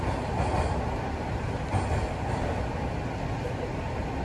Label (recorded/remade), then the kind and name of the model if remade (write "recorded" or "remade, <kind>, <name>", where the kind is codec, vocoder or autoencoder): recorded